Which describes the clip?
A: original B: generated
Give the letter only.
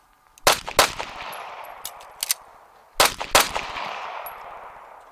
A